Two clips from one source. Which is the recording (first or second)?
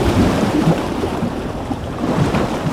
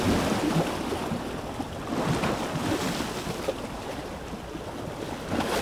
second